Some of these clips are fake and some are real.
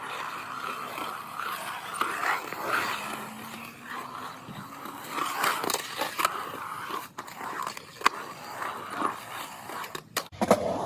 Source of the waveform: real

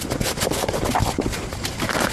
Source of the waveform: real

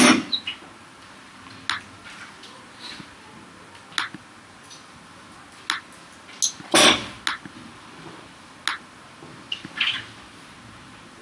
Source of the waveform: real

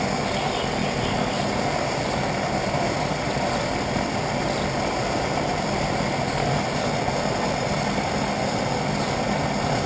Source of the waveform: real